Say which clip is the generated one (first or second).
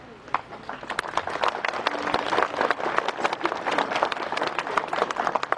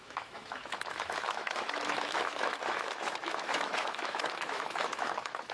second